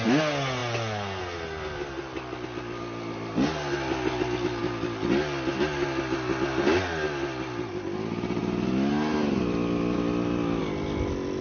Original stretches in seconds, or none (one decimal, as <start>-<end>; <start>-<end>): 0.0-11.4